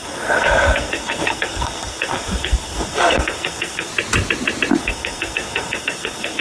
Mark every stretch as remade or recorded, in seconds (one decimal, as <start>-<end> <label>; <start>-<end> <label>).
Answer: 0.0-3.9 remade; 3.9-4.8 recorded; 4.8-6.4 remade

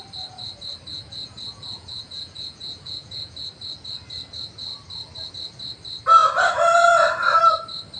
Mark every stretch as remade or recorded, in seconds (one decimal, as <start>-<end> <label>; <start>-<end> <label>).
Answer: 0.0-0.9 recorded; 0.9-3.5 remade; 3.5-8.0 recorded

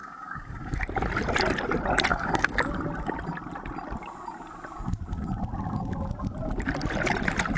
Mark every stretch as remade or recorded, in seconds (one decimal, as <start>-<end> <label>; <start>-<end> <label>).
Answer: 0.0-0.8 remade; 0.8-2.1 recorded; 2.1-2.6 remade; 2.6-7.6 recorded

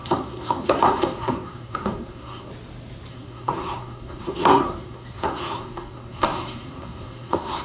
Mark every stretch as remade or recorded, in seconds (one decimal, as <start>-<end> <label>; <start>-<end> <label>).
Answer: 0.0-2.5 remade; 2.5-3.1 recorded; 3.1-7.6 remade